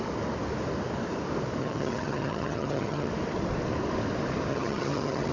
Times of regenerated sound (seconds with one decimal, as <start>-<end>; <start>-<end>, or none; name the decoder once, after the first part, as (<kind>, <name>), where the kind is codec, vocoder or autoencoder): 1.6-3.1 (vocoder, HiFi-GAN); 4.5-5.3